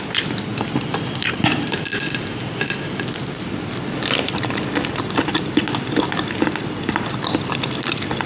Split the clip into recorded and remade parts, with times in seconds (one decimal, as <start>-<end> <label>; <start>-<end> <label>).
0.0-8.3 recorded